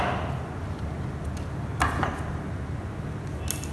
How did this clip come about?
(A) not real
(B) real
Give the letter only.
B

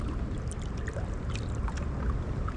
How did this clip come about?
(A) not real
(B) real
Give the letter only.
B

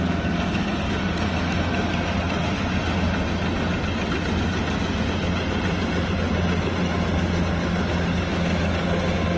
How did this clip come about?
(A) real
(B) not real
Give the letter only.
A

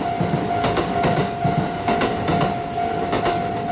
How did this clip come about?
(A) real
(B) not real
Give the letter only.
A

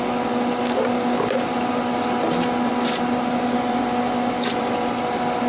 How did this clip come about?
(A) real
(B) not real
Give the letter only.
A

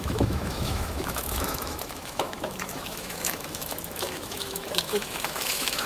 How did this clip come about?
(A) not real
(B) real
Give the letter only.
A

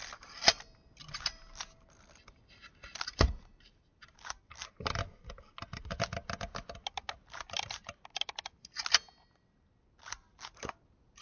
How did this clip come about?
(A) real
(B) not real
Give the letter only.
A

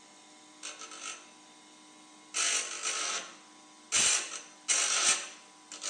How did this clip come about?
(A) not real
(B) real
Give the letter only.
B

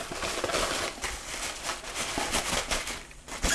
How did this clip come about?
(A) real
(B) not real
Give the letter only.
B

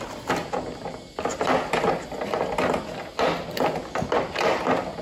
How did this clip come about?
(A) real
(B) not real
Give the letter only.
A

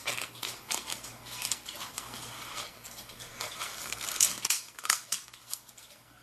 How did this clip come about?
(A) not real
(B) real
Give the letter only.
A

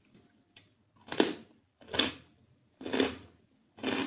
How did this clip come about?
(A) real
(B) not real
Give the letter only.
A